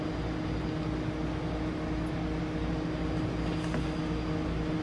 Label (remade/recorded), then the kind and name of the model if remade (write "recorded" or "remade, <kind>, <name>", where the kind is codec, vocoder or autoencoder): recorded